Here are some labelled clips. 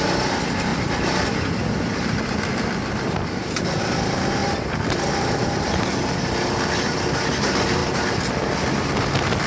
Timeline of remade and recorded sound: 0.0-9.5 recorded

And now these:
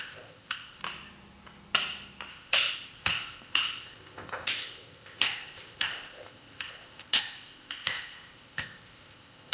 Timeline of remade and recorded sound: 0.0-0.8 remade; 0.8-2.3 recorded; 2.3-9.5 remade

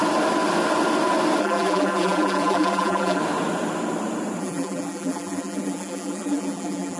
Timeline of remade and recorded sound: 0.0-1.4 recorded; 1.4-3.2 remade; 3.2-4.4 recorded; 4.4-7.0 remade

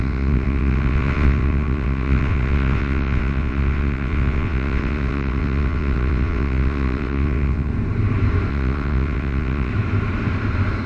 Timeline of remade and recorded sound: 0.0-7.7 remade; 7.7-8.5 recorded; 8.5-9.7 remade; 9.7-10.9 recorded